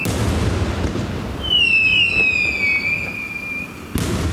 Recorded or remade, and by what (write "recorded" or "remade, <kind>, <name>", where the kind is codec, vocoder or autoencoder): recorded